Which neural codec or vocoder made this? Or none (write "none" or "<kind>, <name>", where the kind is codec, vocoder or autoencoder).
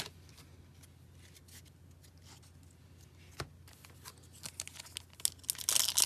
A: none